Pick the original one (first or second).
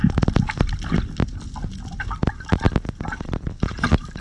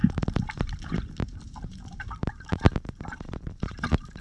first